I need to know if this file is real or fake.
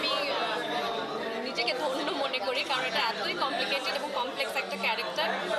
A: real